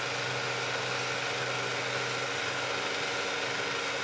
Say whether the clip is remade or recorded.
recorded